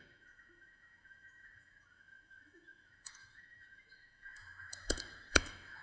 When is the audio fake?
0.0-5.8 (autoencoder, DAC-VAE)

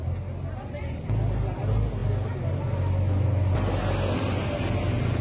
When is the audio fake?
none